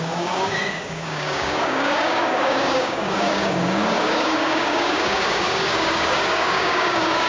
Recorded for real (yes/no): no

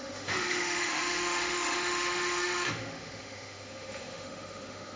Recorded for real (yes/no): no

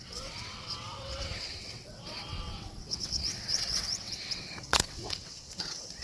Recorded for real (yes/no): no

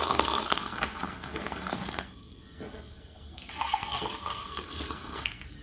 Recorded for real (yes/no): no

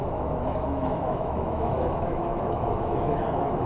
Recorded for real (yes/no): no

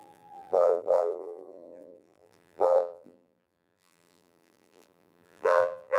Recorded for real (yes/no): no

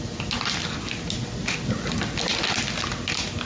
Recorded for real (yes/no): yes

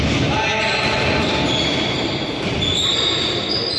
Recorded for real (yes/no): yes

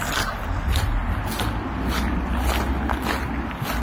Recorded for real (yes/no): yes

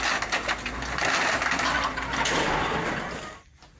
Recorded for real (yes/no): yes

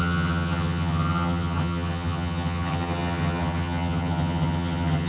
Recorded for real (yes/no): no